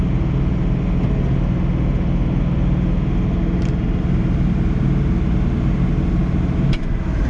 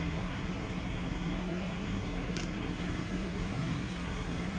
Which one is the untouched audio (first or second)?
first